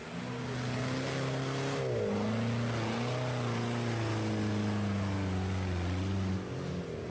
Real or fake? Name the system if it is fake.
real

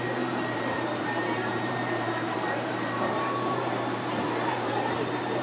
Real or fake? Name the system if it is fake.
fake, vocoder, BigVGAN v2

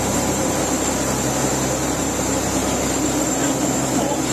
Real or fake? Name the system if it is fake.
fake, vocoder, BigVGAN v2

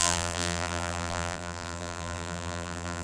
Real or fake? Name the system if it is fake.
fake, vocoder, BigVGAN v2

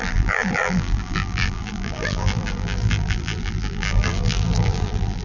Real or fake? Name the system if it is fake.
fake, vocoder, BigVGAN v2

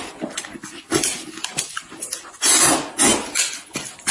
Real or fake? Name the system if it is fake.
real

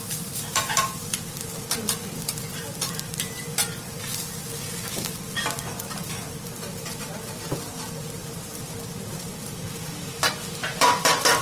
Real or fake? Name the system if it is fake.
fake, vocoder, BigVGAN v2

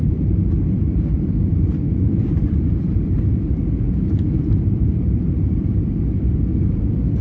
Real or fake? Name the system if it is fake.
fake, vocoder, BigVGAN v2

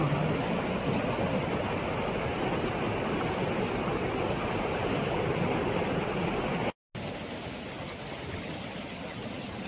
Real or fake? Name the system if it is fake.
real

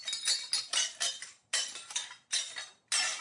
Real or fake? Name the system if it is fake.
real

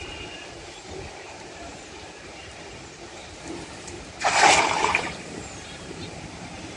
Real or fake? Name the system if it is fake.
fake, vocoder, BigVGAN v2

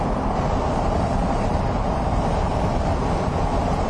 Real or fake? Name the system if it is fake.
fake, vocoder, BigVGAN v2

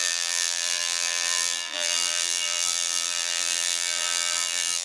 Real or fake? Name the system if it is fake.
fake, vocoder, BigVGAN v2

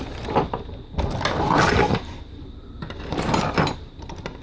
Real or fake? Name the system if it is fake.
fake, vocoder, BigVGAN v2